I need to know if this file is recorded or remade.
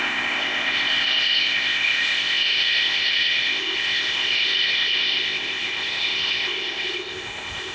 remade